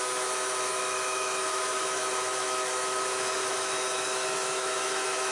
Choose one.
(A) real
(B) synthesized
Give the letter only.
B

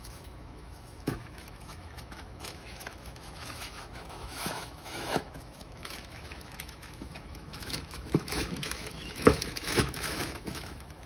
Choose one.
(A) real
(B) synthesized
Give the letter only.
B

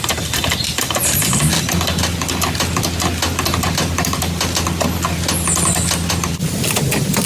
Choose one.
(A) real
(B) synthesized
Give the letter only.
A